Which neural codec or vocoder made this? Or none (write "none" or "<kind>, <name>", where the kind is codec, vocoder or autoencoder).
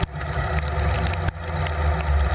none